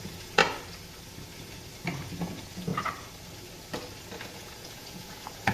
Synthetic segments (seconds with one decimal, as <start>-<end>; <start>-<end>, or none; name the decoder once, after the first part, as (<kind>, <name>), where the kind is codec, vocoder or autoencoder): 0.0-0.4 (vocoder, Vocos); 2.2-2.7; 4.3-5.5